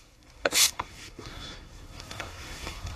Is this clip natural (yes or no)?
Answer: no